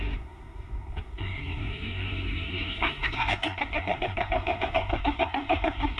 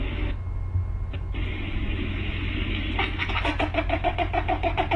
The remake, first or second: first